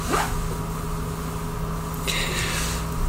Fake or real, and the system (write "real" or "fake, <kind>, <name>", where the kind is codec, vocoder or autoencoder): real